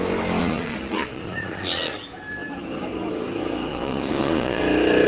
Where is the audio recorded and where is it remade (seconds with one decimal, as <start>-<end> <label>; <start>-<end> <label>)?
0.0-0.4 recorded; 0.4-2.0 remade; 2.0-3.7 recorded; 3.7-4.6 remade; 4.6-5.1 recorded